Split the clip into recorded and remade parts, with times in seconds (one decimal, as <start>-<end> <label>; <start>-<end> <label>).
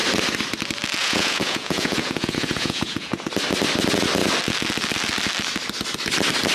0.0-1.0 recorded; 1.0-3.3 remade; 3.3-6.5 recorded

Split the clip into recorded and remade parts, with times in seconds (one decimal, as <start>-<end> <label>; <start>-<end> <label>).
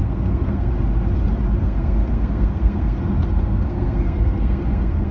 0.0-0.7 remade; 0.7-1.6 recorded; 1.6-5.1 remade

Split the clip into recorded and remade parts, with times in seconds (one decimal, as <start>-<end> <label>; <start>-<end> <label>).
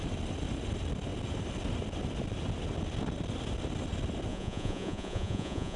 0.0-4.3 recorded; 4.3-5.8 remade